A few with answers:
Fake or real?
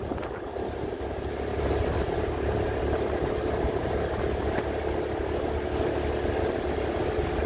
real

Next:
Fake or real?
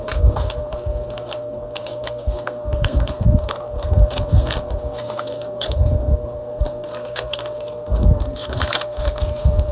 fake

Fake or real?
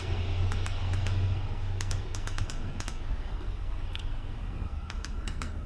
fake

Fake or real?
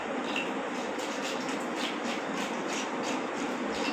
real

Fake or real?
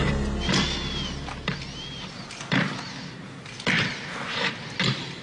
real